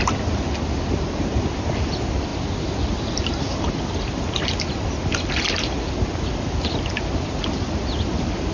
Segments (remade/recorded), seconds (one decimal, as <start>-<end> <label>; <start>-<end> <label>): 0.0-8.5 recorded